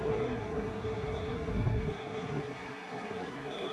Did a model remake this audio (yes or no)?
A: yes